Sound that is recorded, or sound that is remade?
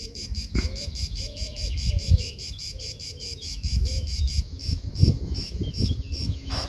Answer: remade